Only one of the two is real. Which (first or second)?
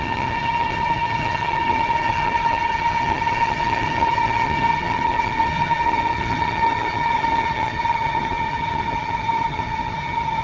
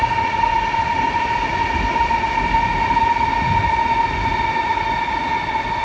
second